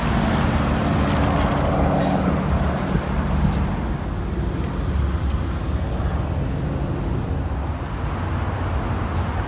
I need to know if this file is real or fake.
real